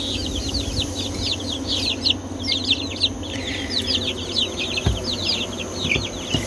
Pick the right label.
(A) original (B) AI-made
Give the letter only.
A